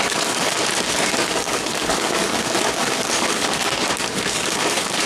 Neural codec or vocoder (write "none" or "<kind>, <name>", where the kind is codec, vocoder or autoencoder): codec, DAC